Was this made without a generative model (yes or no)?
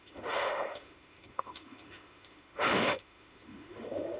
no